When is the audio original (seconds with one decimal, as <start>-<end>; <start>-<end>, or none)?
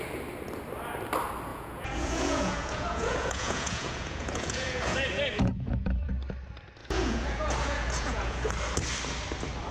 0.0-1.5; 6.1-6.8; 8.5-9.7